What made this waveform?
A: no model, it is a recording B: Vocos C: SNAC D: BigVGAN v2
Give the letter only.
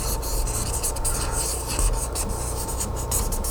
D